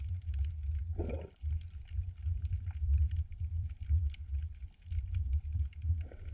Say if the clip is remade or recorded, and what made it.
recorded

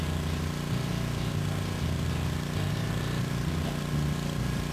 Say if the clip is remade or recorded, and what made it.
recorded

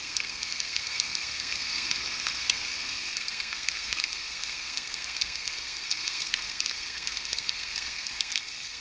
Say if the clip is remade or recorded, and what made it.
remade, codec, SNAC